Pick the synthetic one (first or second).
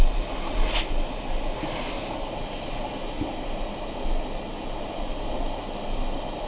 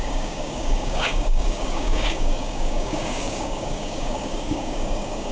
second